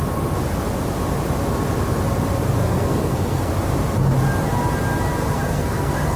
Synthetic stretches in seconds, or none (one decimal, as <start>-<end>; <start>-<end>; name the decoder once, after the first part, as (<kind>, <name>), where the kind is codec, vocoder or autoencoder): 2.6-3.5 (codec, SNAC); 5.2-6.2